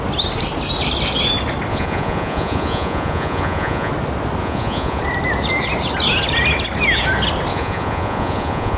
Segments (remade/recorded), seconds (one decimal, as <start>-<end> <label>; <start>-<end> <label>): 0.0-1.7 recorded; 1.7-3.9 remade; 3.9-4.4 recorded; 4.4-5.0 remade; 5.0-7.5 recorded; 7.5-8.8 remade